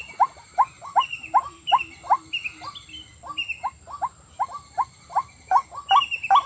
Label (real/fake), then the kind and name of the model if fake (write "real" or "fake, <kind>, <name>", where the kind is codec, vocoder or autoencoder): real